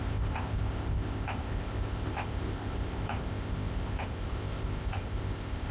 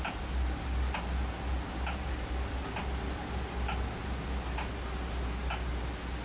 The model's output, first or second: first